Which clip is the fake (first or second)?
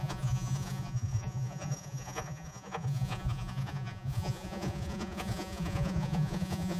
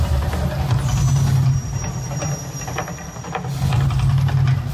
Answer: first